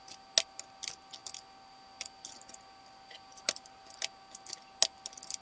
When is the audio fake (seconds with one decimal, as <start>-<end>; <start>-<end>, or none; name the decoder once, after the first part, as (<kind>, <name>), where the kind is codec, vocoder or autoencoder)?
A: none